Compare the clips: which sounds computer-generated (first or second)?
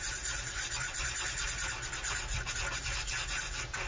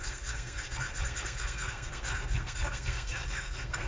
second